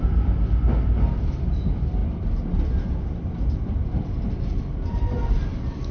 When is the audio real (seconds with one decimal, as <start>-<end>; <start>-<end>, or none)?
0.0-5.9